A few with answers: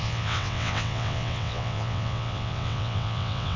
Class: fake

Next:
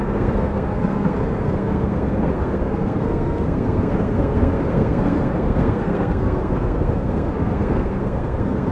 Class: fake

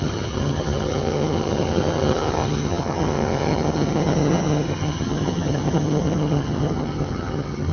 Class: fake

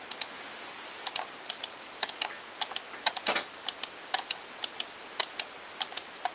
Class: real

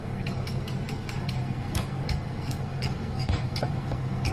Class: fake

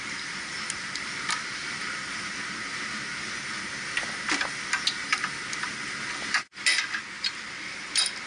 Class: real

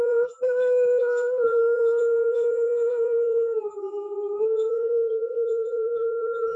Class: fake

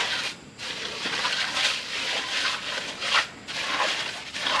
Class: real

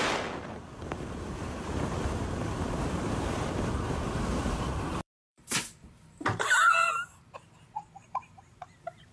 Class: fake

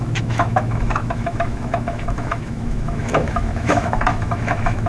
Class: fake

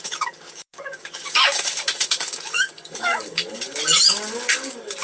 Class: fake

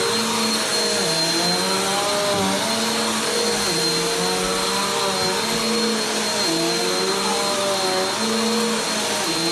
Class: real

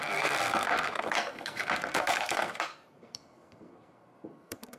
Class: fake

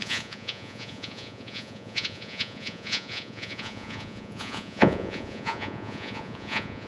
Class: fake